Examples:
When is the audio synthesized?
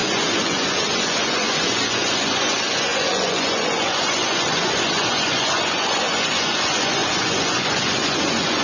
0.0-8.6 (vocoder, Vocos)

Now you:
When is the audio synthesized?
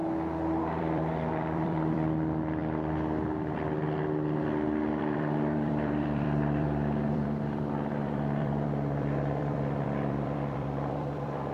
0.6-2.6 (vocoder, BigVGAN v2); 5.0-11.5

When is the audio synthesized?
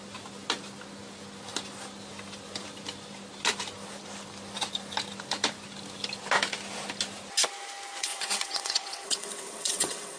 8.0-10.2 (vocoder, WaveNeXt)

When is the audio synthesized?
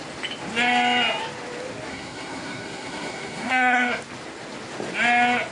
1.9-4.0 (codec, SNAC)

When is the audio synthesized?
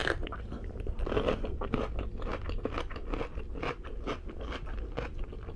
0.0-1.0 (vocoder, BigVGAN v2)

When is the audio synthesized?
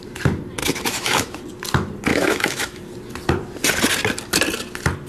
0.6-1.4 (autoencoder, DAC-VAE); 2.1-2.8